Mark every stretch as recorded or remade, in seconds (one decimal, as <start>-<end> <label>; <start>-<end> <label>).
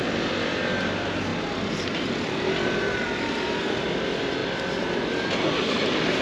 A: 0.0-6.2 recorded